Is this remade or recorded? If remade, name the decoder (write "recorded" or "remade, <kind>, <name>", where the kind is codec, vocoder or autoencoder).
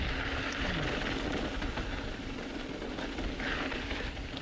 recorded